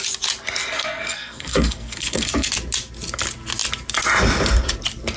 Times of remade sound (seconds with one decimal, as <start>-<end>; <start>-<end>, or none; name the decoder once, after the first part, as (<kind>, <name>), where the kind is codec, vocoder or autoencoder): 0.7-2.5 (codec, SNAC)